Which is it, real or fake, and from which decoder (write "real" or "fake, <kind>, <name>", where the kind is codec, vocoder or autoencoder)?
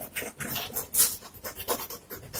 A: real